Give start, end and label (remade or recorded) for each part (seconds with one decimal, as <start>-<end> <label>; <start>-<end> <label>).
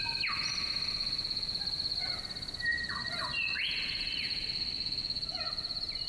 0.0-2.7 recorded; 2.7-5.5 remade; 5.5-6.1 recorded